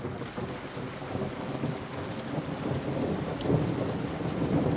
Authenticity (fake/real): real